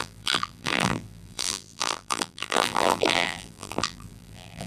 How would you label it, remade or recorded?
remade